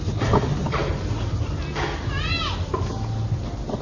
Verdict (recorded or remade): recorded